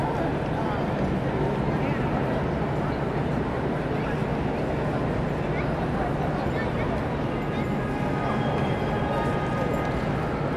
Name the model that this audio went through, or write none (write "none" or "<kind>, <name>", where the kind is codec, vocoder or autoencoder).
none